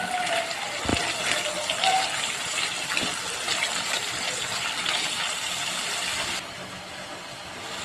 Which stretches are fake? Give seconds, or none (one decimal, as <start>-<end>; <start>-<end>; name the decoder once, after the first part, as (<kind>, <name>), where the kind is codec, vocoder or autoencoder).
0.0-0.9 (vocoder, BigVGAN v2); 1.4-7.8